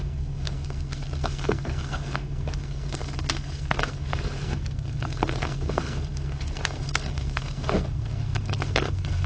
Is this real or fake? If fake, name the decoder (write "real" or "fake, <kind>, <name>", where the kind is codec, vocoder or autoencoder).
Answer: fake, codec, SNAC